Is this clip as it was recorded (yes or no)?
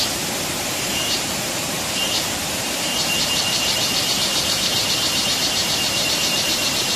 no